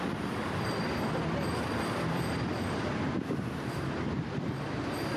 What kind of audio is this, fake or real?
fake